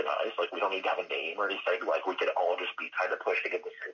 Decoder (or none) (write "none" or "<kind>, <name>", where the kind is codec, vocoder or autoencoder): none